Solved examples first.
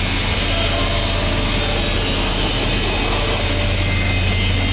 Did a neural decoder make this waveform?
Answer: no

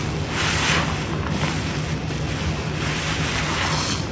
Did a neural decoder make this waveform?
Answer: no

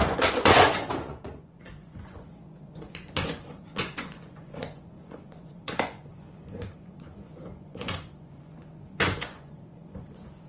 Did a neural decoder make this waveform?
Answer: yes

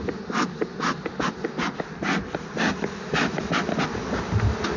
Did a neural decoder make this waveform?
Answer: no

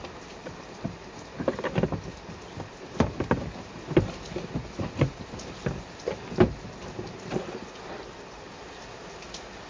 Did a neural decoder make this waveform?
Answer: no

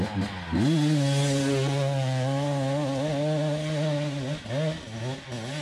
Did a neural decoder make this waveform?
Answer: no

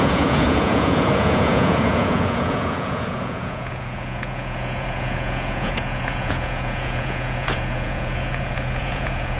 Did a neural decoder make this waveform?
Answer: yes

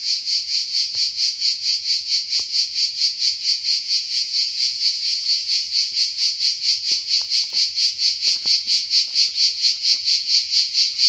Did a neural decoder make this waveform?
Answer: yes